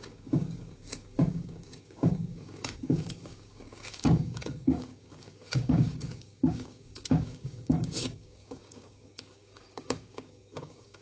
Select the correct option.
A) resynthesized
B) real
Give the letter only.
A